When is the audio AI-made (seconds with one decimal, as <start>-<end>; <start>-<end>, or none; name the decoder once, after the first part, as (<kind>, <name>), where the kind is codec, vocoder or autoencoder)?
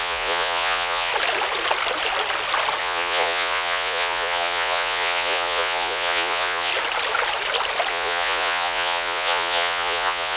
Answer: 0.0-1.1 (vocoder, Vocos); 2.8-6.7; 7.9-10.4